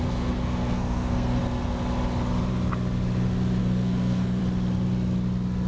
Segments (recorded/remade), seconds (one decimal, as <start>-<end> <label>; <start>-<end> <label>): 0.0-1.4 remade; 1.4-3.6 recorded; 3.6-4.4 remade; 4.4-5.7 recorded